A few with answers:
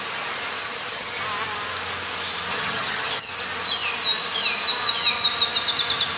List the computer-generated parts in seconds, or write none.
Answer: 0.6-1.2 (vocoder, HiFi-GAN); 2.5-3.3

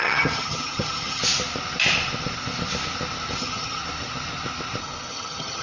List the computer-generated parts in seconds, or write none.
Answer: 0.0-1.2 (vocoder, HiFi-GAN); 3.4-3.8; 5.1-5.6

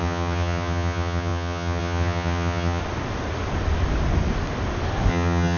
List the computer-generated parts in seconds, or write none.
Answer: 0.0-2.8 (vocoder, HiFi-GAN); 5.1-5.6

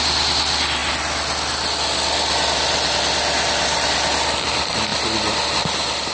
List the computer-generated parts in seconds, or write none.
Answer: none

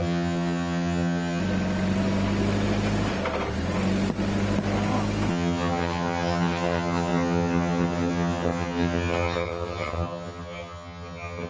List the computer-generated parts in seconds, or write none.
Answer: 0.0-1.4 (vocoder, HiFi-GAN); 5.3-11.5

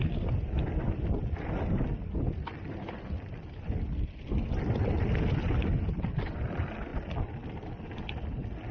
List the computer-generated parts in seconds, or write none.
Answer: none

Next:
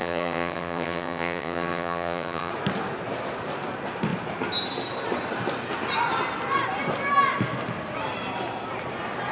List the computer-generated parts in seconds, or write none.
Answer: 0.0-2.5 (vocoder, HiFi-GAN)